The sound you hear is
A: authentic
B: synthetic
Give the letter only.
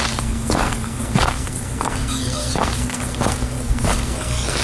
B